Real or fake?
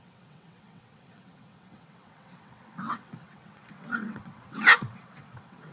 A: fake